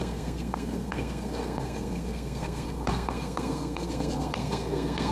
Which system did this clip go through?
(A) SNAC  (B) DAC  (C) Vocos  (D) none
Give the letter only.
A